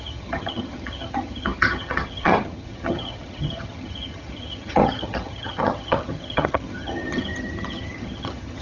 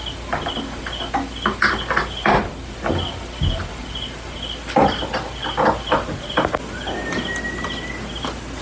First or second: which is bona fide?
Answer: second